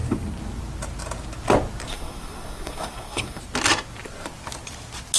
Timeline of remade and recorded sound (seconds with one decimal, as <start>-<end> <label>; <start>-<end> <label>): 0.0-1.9 recorded; 1.9-3.4 remade; 3.4-5.2 recorded